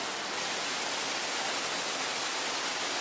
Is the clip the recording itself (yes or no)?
yes